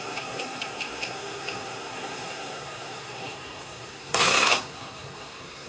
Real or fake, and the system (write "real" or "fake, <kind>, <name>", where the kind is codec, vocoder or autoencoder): fake, codec, SNAC